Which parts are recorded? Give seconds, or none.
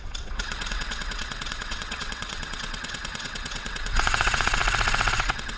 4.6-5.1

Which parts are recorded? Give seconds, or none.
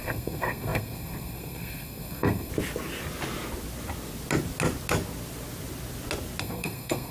2.5-6.4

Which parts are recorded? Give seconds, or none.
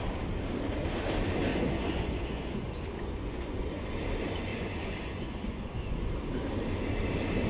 0.0-1.5; 3.9-4.5; 6.1-7.5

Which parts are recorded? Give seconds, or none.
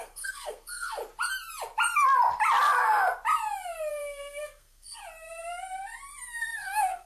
1.0-3.9; 5.0-6.4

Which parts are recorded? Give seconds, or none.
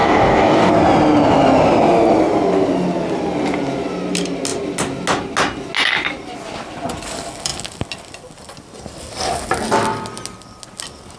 0.7-11.2